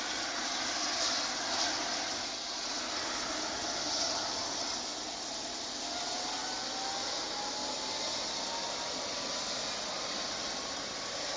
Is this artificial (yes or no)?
no